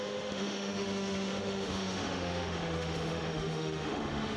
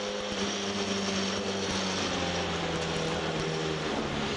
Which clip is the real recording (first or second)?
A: second